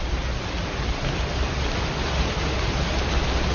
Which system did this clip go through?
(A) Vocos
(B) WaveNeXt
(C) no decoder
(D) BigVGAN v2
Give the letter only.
C